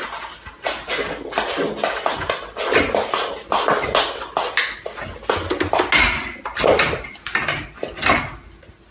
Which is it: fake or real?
real